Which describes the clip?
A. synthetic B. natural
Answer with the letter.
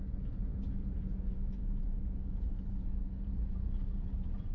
A